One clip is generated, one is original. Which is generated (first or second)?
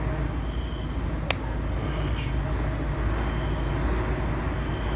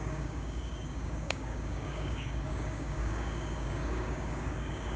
second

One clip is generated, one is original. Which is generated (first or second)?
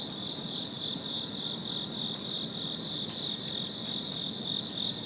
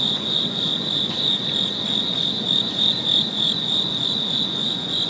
second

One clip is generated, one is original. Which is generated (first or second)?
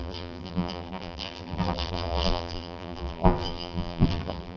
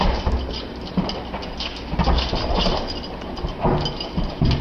first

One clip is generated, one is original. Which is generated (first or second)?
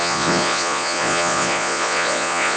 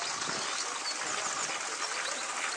first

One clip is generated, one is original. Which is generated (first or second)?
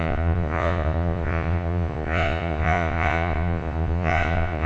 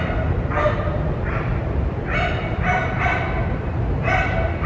first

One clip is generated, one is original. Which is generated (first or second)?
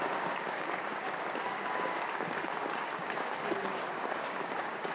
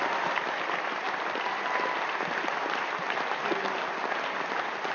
first